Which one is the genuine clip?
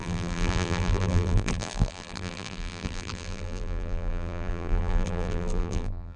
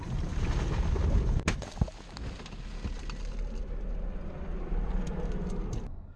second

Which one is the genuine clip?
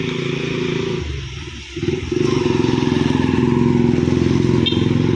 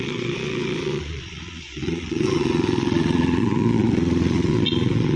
first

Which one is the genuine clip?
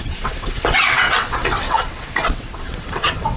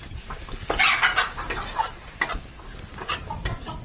second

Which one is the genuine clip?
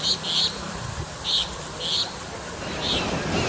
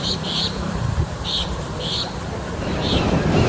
first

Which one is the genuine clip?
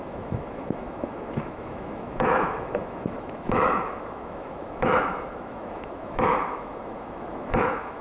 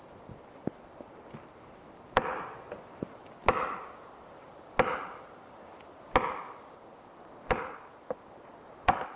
second